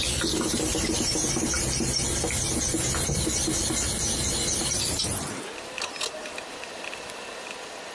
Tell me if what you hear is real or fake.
real